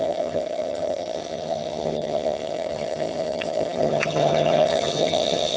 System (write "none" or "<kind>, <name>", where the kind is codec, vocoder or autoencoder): vocoder, HiFi-GAN